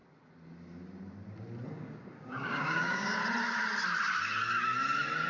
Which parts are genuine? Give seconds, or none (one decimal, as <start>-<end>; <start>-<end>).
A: 0.0-1.7; 3.2-5.3